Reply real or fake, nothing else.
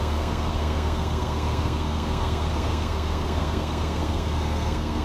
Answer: fake